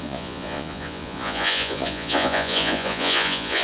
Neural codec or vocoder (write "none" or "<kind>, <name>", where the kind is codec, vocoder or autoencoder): vocoder, Vocos